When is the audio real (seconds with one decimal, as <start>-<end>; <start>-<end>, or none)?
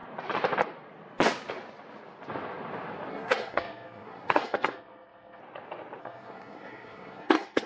0.0-3.1; 5.4-6.0